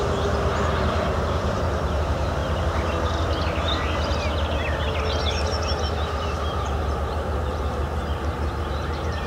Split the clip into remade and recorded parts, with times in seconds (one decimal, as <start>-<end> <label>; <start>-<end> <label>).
0.0-2.4 remade; 2.4-6.6 recorded; 6.6-9.3 remade